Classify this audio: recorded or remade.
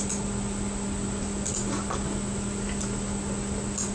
recorded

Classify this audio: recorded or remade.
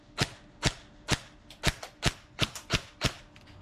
recorded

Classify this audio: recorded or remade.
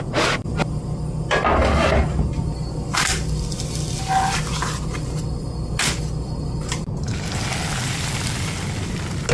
recorded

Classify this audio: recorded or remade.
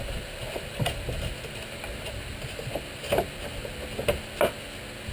recorded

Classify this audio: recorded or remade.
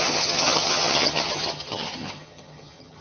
remade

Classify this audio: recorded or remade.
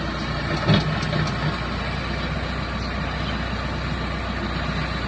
recorded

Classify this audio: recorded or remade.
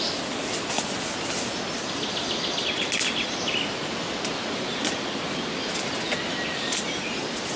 recorded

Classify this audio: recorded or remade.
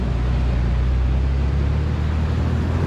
recorded